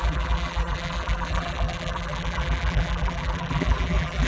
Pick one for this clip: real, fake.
fake